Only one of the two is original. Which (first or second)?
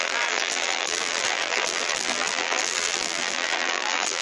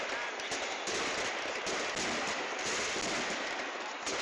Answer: second